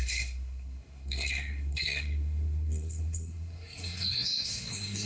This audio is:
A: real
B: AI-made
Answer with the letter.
B